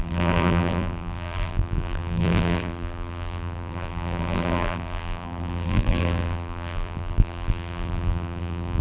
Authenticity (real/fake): fake